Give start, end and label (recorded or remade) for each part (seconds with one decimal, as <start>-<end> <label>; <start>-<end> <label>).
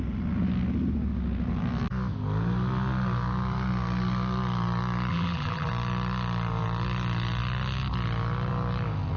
0.0-5.1 recorded; 5.1-5.7 remade; 5.7-9.2 recorded